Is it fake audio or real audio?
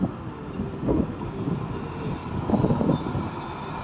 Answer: real